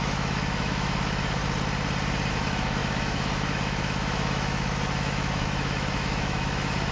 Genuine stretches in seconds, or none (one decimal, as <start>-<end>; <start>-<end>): 1.4-2.3